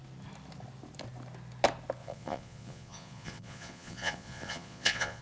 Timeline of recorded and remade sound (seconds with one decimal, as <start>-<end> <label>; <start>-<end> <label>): 0.0-2.0 recorded; 2.0-5.2 remade